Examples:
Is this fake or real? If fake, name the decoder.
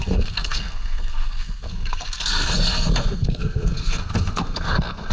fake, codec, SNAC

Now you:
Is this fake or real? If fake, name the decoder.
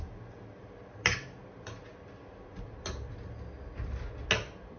real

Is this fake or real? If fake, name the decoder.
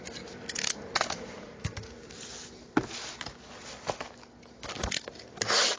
real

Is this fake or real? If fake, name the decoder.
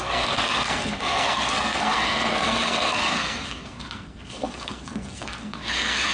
fake, codec, SNAC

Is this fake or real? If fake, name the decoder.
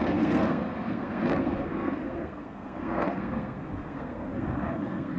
fake, codec, SNAC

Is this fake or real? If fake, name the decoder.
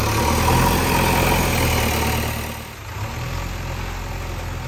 real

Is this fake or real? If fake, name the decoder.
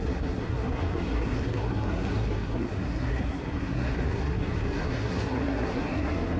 fake, codec, SNAC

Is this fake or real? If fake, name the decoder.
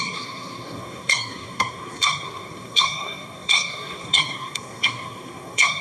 fake, codec, SNAC